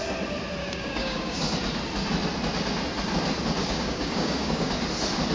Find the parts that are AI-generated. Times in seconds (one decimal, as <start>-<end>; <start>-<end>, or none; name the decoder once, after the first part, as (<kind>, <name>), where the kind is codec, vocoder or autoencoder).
0.6-1.4 (codec, DAC); 3.6-4.7